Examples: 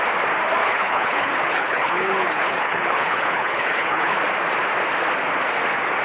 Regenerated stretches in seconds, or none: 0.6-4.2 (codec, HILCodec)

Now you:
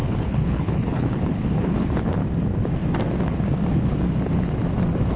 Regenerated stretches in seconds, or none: 0.0-2.2 (codec, HILCodec)

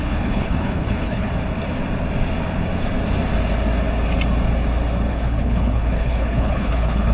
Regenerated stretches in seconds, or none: 0.0-1.3 (codec, HILCodec); 5.1-7.1

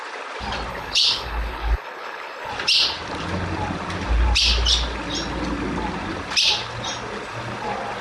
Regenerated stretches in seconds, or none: 0.7-2.5 (codec, HILCodec)

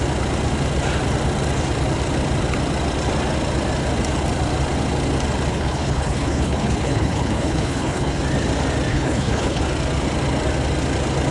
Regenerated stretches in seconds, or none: 5.5-8.2 (codec, HILCodec); 8.9-9.6

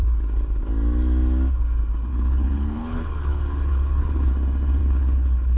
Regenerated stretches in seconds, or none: 2.1-4.3 (codec, HILCodec); 4.8-5.6